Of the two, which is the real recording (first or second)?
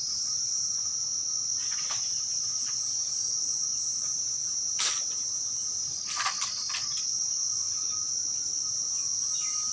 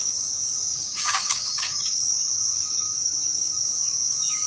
first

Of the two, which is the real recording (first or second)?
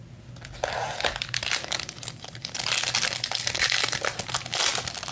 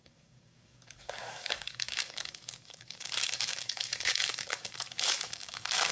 first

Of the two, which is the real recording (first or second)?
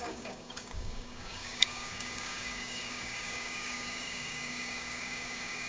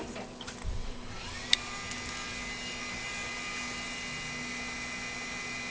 second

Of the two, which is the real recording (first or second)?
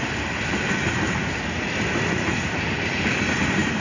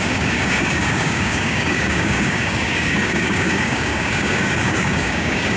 first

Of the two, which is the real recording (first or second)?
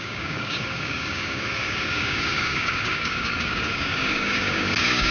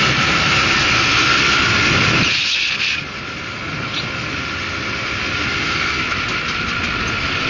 second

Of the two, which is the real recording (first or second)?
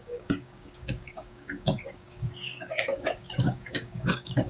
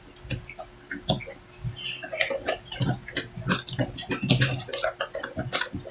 second